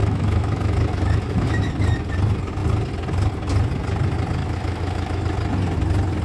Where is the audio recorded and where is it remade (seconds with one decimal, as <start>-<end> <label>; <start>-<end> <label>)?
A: 0.0-1.7 remade; 1.7-4.4 recorded; 4.4-5.2 remade; 5.2-6.2 recorded